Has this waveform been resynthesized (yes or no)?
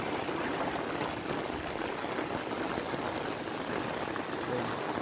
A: no